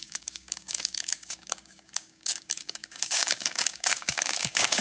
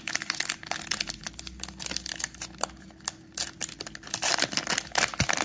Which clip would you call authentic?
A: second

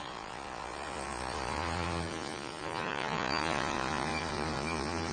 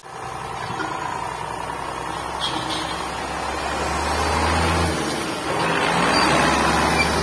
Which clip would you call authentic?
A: second